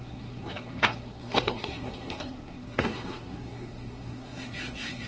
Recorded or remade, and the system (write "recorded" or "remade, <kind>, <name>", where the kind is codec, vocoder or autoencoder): remade, codec, SNAC